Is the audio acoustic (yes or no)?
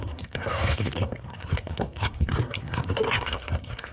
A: no